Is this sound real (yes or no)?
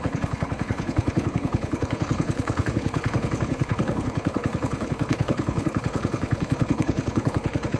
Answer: no